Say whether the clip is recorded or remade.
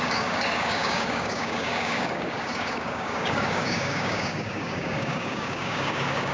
remade